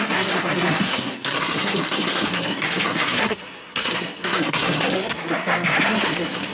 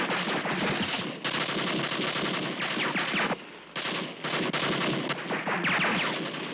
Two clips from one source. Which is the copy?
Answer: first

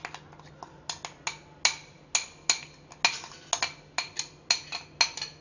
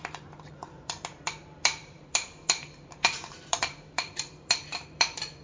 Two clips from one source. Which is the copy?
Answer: second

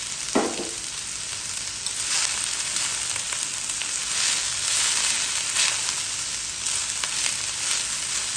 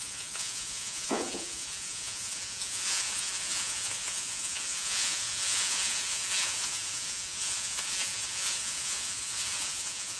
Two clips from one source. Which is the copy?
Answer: second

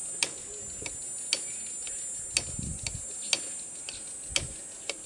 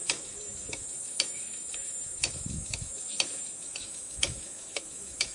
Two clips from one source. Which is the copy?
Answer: second